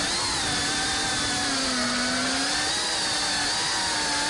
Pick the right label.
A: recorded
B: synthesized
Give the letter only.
A